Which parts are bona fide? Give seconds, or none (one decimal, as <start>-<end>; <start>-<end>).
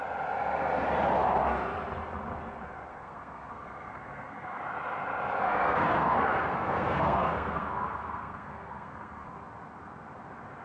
0.0-2.9; 4.6-5.4; 9.3-10.6